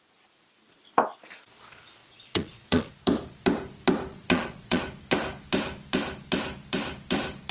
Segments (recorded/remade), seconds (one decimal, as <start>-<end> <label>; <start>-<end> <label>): 0.0-2.0 recorded; 2.0-2.9 remade; 2.9-4.1 recorded; 4.1-4.8 remade; 4.8-7.5 recorded